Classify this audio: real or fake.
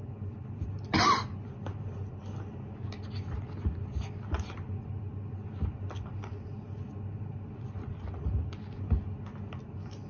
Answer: real